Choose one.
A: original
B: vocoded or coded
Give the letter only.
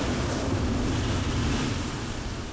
A